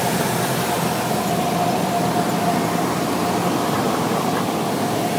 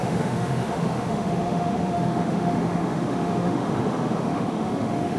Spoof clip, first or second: second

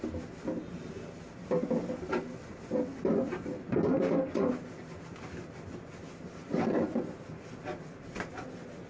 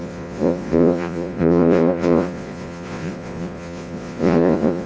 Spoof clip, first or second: second